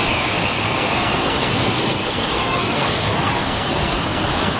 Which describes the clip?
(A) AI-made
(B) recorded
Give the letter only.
A